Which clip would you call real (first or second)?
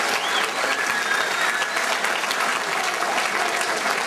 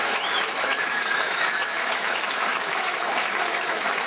first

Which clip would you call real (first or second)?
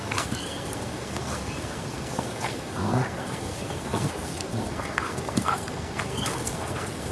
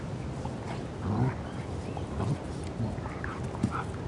second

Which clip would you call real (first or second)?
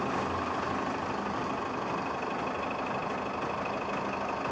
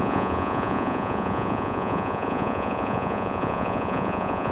first